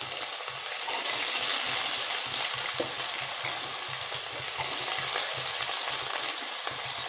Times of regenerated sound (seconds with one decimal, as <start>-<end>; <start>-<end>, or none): none